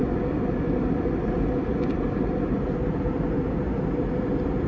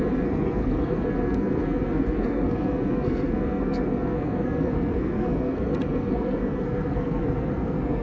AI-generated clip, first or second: second